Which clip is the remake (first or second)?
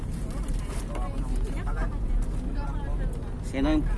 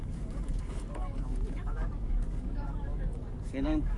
second